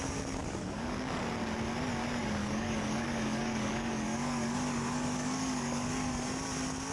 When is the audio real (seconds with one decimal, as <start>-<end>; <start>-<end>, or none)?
0.0-0.4; 1.2-2.4; 6.1-6.9